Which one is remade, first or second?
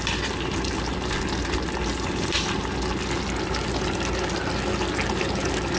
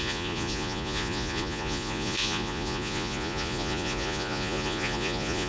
second